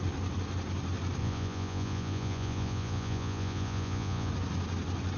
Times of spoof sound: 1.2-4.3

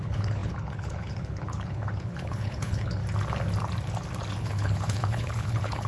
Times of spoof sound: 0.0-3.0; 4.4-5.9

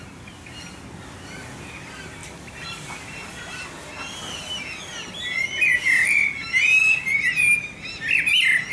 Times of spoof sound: none